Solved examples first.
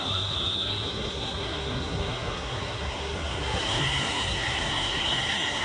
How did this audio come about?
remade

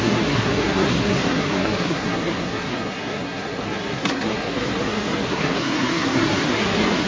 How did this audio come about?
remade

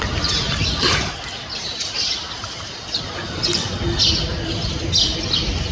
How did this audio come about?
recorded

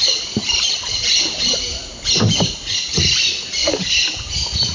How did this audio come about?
recorded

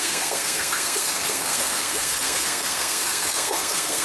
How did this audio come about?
remade